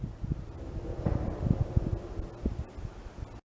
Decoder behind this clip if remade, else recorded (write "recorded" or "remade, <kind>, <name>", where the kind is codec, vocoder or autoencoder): recorded